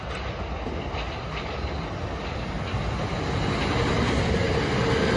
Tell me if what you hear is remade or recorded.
recorded